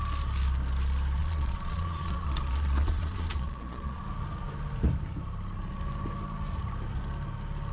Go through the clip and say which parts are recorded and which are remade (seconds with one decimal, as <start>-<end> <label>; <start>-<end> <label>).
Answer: 0.0-1.2 recorded; 1.2-4.0 remade; 4.0-7.7 recorded